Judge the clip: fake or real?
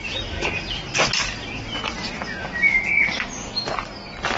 real